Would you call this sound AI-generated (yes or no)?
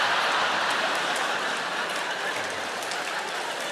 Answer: no